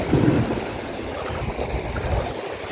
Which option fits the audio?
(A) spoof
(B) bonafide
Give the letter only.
B